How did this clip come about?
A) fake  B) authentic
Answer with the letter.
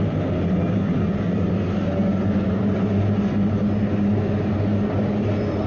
B